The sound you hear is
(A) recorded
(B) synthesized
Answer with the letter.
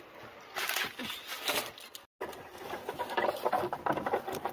A